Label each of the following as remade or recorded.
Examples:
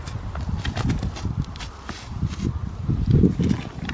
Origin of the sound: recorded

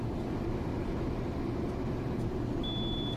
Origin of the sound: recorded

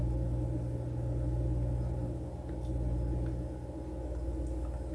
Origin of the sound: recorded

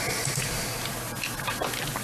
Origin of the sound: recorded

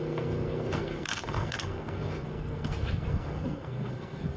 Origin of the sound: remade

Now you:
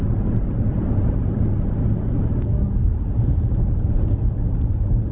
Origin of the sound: recorded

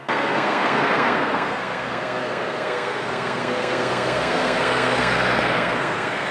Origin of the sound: remade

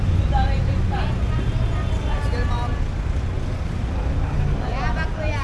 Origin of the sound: recorded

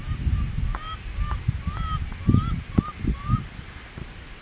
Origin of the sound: recorded